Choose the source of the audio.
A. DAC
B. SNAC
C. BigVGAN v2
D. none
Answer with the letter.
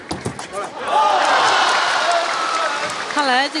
D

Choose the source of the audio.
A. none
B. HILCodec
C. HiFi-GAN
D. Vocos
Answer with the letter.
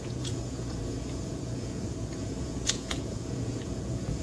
D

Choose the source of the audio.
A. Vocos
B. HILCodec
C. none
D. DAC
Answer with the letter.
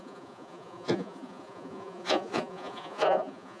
A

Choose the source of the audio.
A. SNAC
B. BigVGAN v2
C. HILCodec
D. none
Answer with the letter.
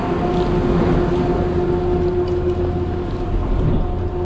D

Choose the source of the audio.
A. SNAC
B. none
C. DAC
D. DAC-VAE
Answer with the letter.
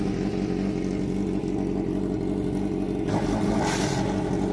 B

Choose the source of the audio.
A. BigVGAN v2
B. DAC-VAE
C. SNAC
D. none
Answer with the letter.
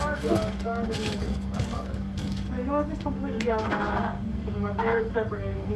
C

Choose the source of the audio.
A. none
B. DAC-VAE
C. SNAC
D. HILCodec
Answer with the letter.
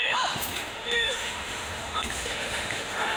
B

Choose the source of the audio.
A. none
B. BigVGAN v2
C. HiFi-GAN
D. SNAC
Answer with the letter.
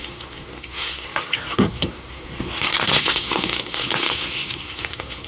D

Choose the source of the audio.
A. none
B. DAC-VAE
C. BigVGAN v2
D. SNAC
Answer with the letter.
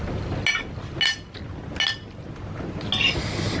A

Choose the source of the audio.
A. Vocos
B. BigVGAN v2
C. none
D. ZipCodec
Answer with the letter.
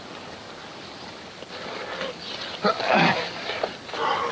C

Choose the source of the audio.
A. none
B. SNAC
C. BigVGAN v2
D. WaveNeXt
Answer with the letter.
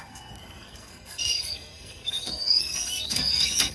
B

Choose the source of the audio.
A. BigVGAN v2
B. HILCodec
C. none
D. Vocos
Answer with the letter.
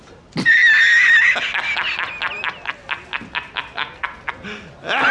C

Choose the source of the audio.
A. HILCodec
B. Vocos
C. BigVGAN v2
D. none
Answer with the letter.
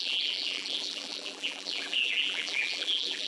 C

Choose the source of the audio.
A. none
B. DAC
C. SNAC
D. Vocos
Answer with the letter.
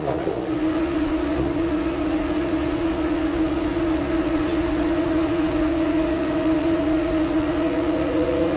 D